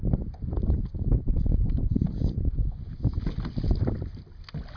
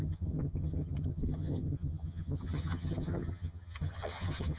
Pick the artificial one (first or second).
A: second